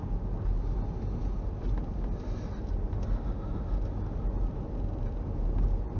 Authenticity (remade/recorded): recorded